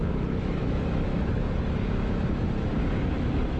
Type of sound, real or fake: fake